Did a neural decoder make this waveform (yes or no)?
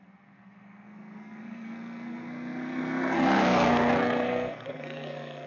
yes